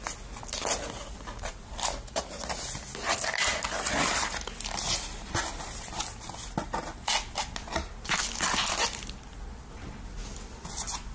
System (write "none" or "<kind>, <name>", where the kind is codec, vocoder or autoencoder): none